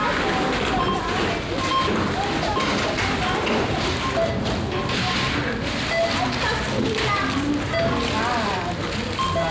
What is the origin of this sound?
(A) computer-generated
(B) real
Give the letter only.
B